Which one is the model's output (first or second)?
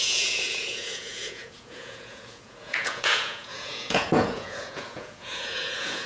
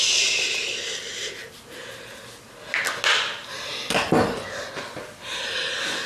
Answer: first